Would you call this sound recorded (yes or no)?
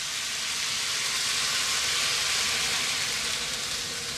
yes